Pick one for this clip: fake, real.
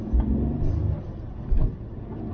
real